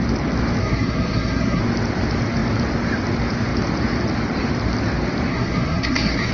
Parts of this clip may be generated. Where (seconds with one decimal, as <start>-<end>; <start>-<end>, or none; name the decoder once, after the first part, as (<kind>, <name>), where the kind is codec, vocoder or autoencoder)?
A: 0.6-1.6 (codec, SNAC); 5.3-6.3

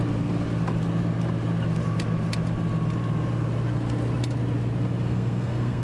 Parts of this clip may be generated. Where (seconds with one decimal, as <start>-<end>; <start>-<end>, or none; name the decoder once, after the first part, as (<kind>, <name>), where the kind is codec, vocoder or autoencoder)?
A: 5.1-5.8 (codec, SNAC)

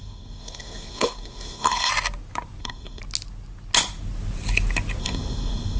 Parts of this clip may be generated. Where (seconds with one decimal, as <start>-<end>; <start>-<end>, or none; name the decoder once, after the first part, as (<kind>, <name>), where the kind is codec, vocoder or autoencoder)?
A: 0.0-1.9 (codec, SNAC); 2.6-3.0; 5.0-5.8

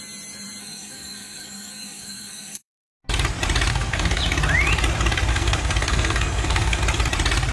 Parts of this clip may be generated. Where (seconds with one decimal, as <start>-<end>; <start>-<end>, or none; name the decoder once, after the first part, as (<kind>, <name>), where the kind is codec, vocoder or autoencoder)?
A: 0.6-2.9 (codec, SNAC); 3.7-4.2; 5.3-6.8

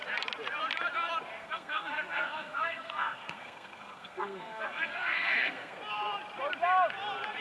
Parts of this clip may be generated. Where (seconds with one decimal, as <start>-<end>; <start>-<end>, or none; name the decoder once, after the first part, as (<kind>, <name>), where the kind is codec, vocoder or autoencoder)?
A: 1.4-5.8 (codec, SNAC)

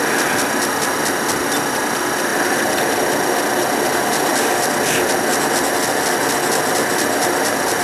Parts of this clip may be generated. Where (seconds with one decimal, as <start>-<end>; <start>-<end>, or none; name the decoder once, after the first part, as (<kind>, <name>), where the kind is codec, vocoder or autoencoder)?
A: none

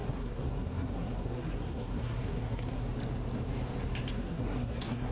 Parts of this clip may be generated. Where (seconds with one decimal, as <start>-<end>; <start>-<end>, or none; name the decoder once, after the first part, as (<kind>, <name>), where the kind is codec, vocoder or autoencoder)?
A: 0.0-2.9 (codec, SNAC); 4.1-5.1

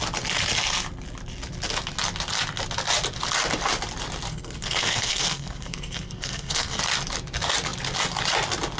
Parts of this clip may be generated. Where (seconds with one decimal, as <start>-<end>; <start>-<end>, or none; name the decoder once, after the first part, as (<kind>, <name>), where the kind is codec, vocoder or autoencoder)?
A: 4.3-6.8 (codec, SNAC)